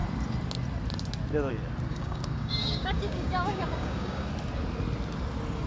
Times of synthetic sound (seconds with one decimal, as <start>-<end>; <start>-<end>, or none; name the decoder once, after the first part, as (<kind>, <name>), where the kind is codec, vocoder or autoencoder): 1.9-4.3 (codec, DAC)